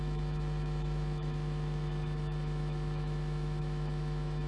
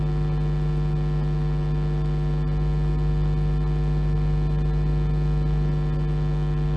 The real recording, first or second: second